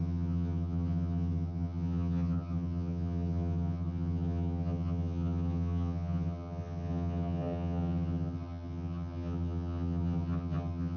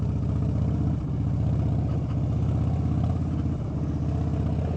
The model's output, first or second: first